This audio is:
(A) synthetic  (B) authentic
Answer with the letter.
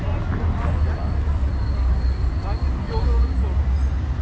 B